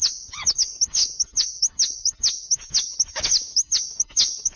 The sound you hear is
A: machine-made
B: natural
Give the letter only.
A